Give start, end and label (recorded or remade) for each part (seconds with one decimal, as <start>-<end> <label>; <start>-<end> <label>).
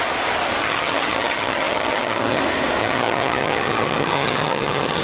0.0-0.6 recorded; 0.6-2.4 remade; 2.4-2.8 recorded; 2.8-5.0 remade